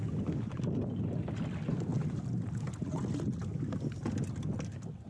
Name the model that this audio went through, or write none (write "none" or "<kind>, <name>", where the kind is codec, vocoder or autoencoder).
none